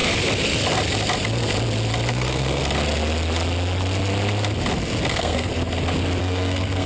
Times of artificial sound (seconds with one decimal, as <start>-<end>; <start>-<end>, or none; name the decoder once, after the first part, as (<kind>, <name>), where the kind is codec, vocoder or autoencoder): 2.1-2.6 (codec, SNAC); 5.1-5.5; 6.2-6.9